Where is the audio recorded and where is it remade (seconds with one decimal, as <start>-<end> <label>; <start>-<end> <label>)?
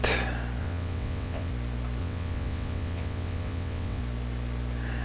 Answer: 0.0-0.6 recorded; 0.6-1.5 remade; 1.5-2.0 recorded; 2.0-4.0 remade; 4.0-5.0 recorded